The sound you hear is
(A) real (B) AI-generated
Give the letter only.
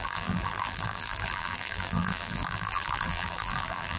B